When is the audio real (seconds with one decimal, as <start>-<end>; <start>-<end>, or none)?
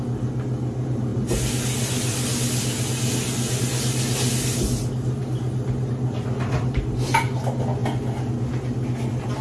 0.0-9.4